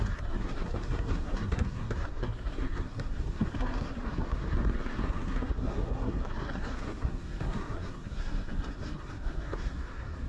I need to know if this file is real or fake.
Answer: fake